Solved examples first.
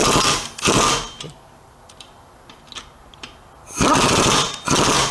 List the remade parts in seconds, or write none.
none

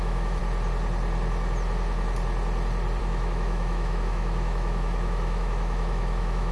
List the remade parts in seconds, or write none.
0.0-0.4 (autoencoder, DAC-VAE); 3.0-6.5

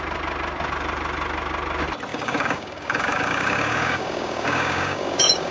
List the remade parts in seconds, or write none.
2.1-5.5 (codec, DAC)

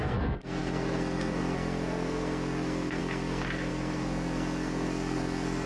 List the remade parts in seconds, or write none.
0.0-5.7 (codec, SNAC)

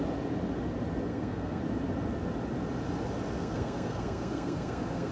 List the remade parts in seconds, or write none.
1.1-1.6 (codec, SNAC); 3.4-5.1

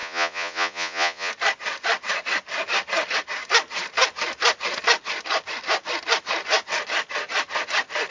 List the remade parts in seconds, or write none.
0.0-1.3 (vocoder, Vocos)